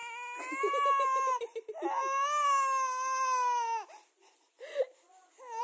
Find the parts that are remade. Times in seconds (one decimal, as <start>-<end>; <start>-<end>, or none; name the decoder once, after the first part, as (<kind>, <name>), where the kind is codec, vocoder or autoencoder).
none